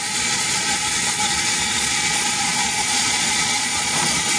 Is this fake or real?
fake